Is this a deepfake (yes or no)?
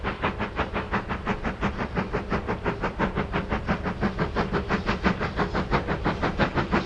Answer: no